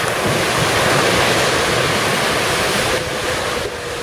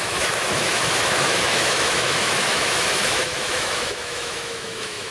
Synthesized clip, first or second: second